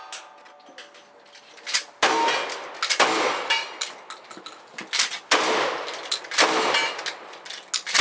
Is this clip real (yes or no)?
yes